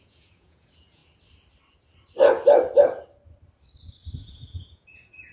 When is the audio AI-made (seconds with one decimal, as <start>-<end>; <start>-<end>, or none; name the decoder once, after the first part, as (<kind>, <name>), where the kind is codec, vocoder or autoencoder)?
0.0-1.0 (vocoder, Vocos); 4.2-5.3